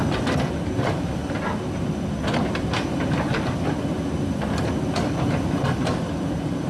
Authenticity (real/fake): real